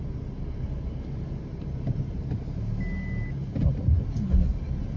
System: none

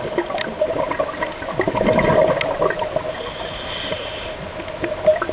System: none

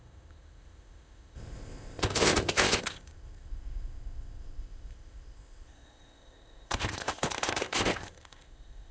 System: codec, ZipCodec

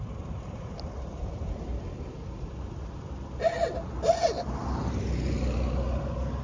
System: none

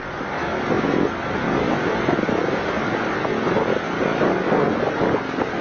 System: none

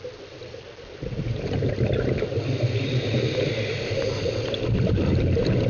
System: none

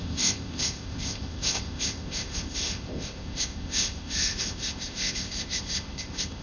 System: codec, ZipCodec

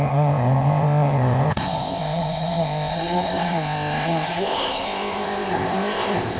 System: codec, ZipCodec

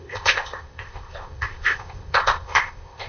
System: codec, ZipCodec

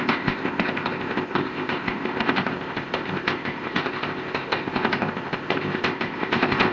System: codec, ZipCodec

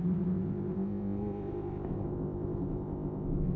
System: codec, ZipCodec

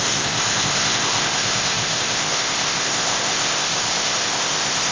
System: codec, ZipCodec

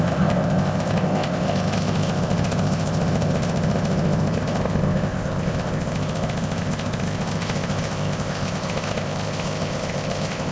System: codec, ZipCodec